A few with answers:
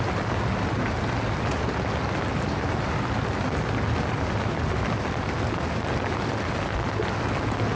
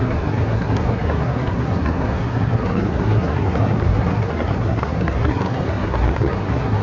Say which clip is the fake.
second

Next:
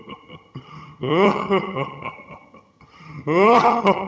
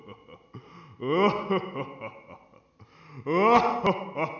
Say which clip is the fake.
first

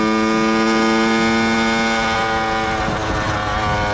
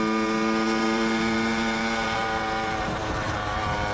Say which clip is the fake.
second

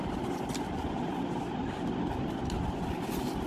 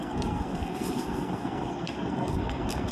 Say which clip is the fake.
second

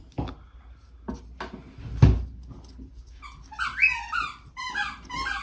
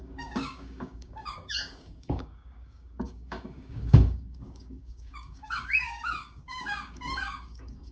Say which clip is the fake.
second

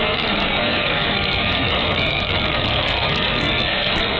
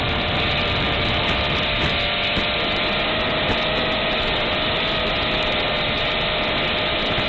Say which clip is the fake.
first